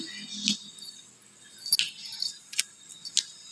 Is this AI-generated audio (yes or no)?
no